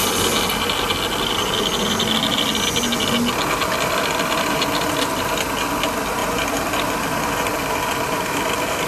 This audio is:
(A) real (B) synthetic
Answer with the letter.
A